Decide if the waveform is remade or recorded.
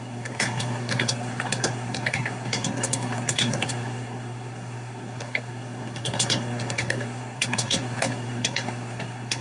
remade